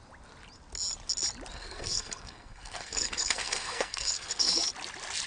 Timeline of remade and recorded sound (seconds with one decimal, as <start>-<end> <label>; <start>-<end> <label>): 0.0-1.5 recorded; 1.5-4.7 remade; 4.7-5.3 recorded